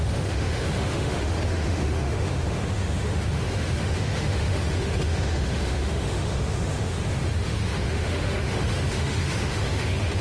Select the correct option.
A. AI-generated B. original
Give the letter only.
A